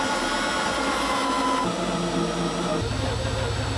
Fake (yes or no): no